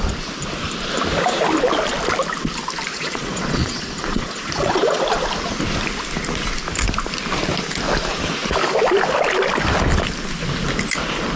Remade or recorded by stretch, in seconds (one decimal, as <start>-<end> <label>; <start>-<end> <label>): 0.0-2.9 recorded; 2.9-5.0 remade; 5.0-11.4 recorded